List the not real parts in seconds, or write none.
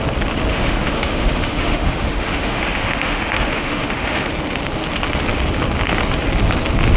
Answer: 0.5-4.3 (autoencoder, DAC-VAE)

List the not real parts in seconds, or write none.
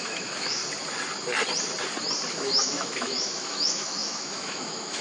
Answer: 0.0-0.6 (autoencoder, DAC-VAE); 2.3-5.0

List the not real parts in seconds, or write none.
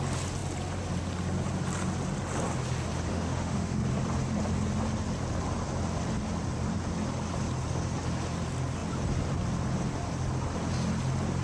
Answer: 3.1-3.8 (autoencoder, DAC-VAE)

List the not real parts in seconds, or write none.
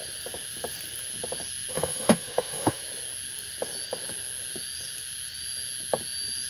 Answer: 1.7-2.8 (autoencoder, DAC-VAE)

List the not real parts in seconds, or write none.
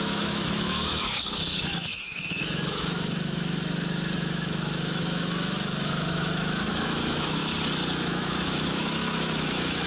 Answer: 0.0-7.4 (autoencoder, DAC-VAE); 8.1-9.9